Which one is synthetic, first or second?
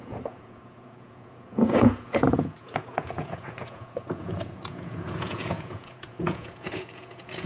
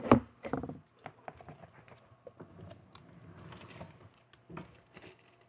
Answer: first